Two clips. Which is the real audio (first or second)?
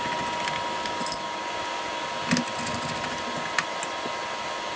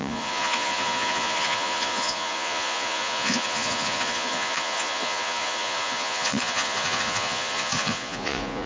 first